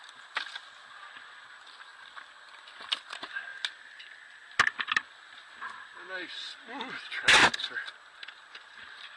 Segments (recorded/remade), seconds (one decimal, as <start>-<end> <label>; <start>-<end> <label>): 0.0-9.2 recorded